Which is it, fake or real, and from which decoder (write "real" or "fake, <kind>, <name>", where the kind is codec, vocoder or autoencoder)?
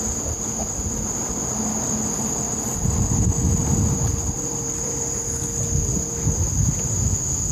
real